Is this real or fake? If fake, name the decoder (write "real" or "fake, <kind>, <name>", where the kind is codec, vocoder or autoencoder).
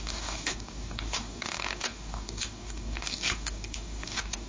fake, codec, DAC